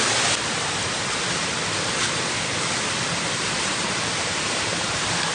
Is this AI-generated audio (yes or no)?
no